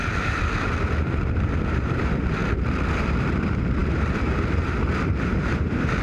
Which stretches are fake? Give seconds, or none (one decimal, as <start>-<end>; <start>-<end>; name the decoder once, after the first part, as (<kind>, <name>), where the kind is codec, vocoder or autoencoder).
1.2-2.4 (vocoder, BigVGAN v2); 3.0-6.0